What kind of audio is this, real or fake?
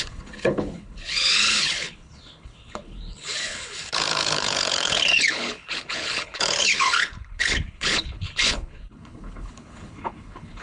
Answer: fake